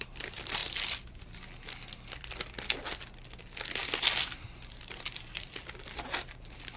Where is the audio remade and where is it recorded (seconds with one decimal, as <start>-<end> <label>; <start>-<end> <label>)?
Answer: 0.0-0.6 remade; 0.6-4.7 recorded; 4.7-6.8 remade